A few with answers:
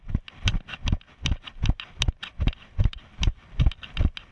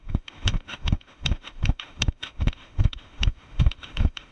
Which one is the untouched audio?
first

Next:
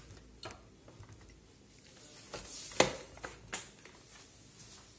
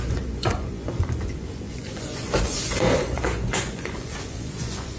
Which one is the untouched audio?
first